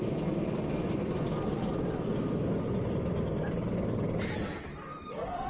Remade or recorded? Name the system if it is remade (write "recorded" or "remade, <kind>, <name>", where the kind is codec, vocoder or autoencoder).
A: recorded